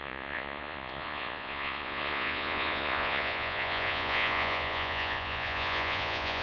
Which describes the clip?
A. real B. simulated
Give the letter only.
B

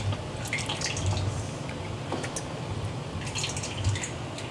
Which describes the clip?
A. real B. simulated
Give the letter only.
A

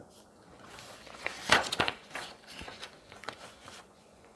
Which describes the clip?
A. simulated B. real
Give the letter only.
A